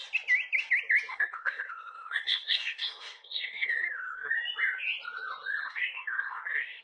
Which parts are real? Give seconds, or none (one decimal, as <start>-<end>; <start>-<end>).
0.0-1.1; 4.3-5.6